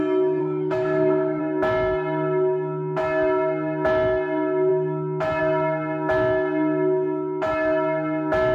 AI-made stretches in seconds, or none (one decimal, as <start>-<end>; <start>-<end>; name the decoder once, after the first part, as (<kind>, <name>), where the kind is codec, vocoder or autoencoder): 0.4-1.4 (codec, SNAC)